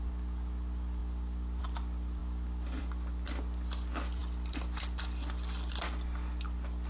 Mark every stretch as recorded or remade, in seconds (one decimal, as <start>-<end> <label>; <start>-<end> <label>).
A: 0.0-1.0 recorded; 1.0-1.6 remade; 1.6-4.2 recorded; 4.2-4.8 remade; 4.8-6.9 recorded